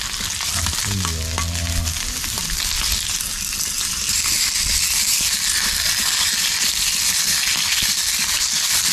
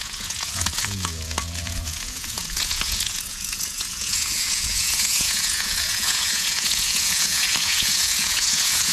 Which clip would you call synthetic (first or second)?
second